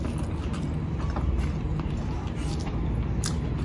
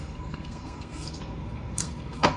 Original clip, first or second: first